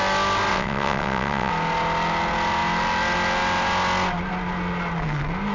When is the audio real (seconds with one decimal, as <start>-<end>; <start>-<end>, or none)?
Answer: 0.0-0.5; 1.5-5.5